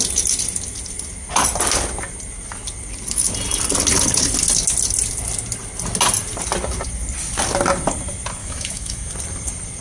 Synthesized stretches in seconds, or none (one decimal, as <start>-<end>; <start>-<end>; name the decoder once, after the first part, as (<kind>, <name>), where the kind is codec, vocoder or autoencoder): 8.4-9.1 (autoencoder, DAC-VAE)